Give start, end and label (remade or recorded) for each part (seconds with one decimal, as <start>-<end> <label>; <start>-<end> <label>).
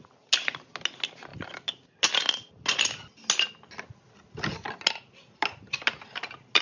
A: 0.0-6.6 recorded